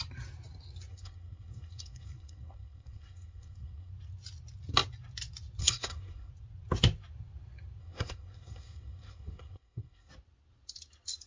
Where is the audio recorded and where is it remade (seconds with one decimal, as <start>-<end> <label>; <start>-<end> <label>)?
0.0-0.9 recorded; 0.9-3.9 remade; 3.9-5.6 recorded; 5.6-6.3 remade; 6.3-7.8 recorded; 7.8-10.1 remade; 10.1-11.3 recorded